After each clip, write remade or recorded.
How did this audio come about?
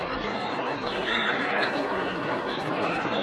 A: remade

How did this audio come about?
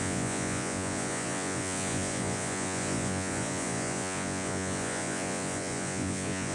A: remade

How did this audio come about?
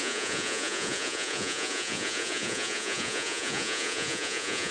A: remade